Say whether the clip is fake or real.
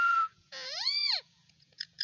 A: fake